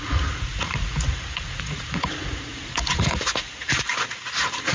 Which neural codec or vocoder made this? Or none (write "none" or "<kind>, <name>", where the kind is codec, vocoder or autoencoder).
vocoder, Vocos